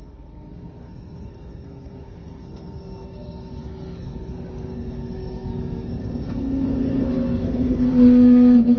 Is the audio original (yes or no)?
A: no